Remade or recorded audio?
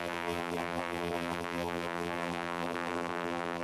remade